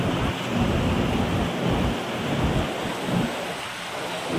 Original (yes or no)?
yes